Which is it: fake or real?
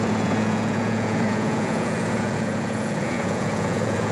fake